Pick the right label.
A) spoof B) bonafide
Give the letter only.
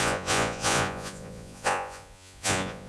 A